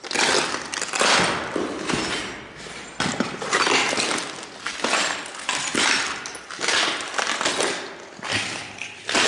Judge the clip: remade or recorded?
recorded